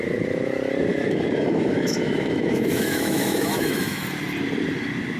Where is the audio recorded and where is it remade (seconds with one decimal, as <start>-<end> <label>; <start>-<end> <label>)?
0.0-0.9 recorded; 0.9-4.0 remade; 4.0-5.2 recorded

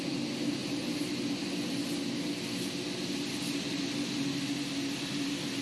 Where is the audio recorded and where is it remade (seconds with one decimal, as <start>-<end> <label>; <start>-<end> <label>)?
0.0-5.6 recorded

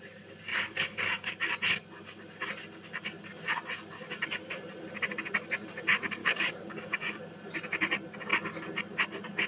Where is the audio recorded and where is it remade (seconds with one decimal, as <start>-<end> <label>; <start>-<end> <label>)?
0.0-0.5 recorded; 0.5-1.3 remade; 1.3-6.2 recorded; 6.2-7.2 remade; 7.2-9.5 recorded

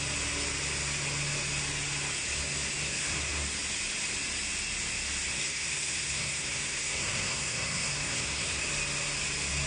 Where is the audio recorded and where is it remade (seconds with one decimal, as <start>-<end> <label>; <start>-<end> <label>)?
0.0-2.8 recorded; 2.8-3.4 remade; 3.4-5.3 recorded; 5.3-8.7 remade; 8.7-9.7 recorded

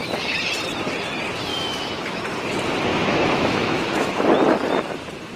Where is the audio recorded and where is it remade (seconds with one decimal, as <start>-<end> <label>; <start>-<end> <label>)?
0.0-1.5 recorded; 1.5-2.2 remade; 2.2-2.9 recorded; 2.9-4.1 remade; 4.1-5.4 recorded

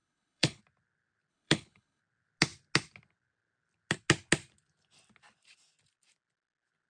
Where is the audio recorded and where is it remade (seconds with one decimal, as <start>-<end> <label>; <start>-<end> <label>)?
0.0-0.6 remade; 0.6-1.3 recorded; 1.3-2.0 remade; 2.0-6.9 recorded